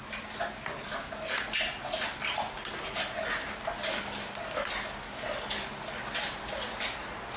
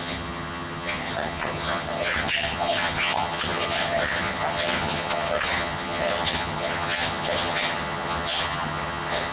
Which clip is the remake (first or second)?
second